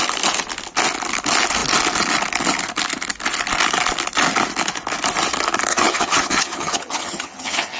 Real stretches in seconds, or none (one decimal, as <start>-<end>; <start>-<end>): 0.0-5.7